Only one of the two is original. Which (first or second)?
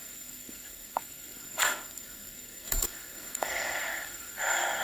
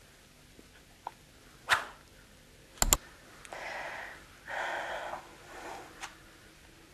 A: second